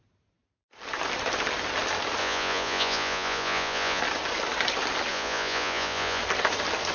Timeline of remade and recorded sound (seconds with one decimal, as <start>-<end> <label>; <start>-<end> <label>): 0.0-2.2 recorded; 2.2-4.0 remade; 4.0-5.1 recorded; 5.1-6.2 remade; 6.2-6.9 recorded